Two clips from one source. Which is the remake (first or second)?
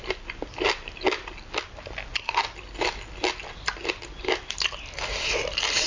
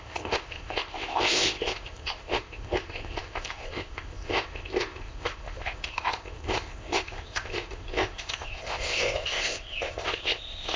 second